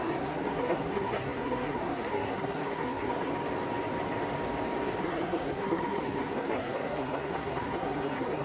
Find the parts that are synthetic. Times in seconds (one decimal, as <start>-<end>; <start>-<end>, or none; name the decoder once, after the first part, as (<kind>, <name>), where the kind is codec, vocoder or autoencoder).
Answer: 0.0-3.3 (codec, SNAC); 5.0-8.4